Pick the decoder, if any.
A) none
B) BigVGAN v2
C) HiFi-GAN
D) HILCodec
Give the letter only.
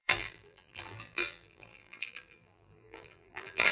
B